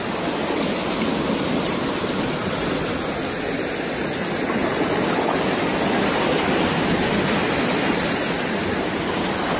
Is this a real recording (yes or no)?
yes